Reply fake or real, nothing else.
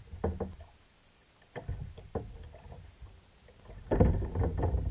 real